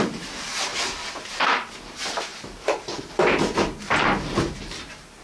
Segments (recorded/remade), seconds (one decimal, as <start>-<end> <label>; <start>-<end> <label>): 0.0-0.7 remade; 0.7-1.3 recorded; 1.3-5.2 remade